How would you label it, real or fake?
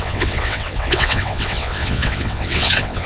fake